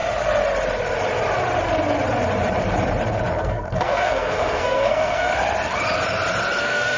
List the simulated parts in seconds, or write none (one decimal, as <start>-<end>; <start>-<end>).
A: 3.4-5.3; 6.6-7.0